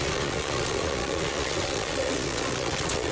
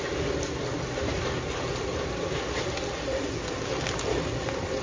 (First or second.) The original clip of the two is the second